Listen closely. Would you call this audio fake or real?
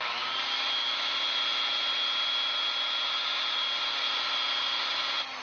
real